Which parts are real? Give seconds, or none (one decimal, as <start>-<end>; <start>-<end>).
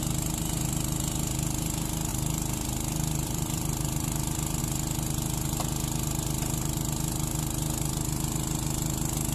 0.0-2.1; 4.6-9.3